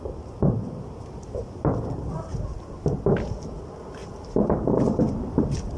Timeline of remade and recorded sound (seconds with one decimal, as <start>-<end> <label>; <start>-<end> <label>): 0.0-4.0 recorded; 4.0-5.1 remade; 5.1-5.8 recorded